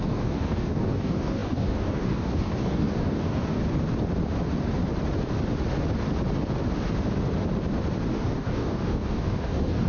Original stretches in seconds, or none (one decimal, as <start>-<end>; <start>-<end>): 3.6-8.1